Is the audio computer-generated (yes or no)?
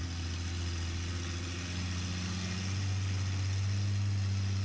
no